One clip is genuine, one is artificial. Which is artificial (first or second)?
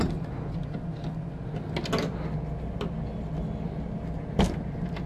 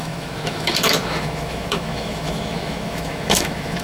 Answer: second